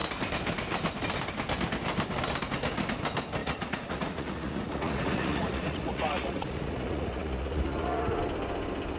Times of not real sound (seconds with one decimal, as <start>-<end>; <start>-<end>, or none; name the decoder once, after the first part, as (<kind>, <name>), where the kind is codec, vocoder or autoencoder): 3.4-8.2 (vocoder, Vocos)